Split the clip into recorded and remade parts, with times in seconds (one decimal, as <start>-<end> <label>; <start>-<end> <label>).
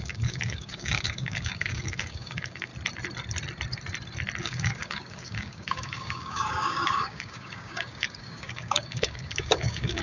0.0-2.7 remade; 2.7-4.4 recorded; 4.4-10.0 remade